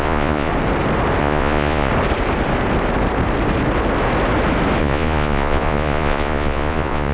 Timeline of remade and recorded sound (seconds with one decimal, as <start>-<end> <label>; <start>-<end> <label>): 0.0-0.5 remade; 0.5-1.2 recorded; 1.2-1.9 remade; 1.9-4.8 recorded; 4.8-7.1 remade